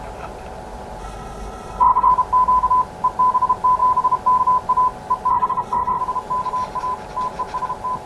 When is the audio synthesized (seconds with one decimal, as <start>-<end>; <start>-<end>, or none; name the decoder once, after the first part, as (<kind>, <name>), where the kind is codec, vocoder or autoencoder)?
1.0-2.1 (codec, HILCodec); 5.3-6.0